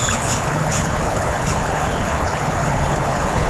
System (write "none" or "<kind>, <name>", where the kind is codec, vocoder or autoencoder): codec, HILCodec